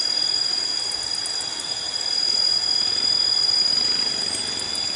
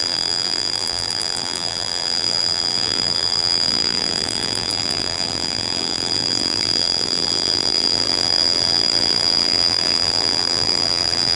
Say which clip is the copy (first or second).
second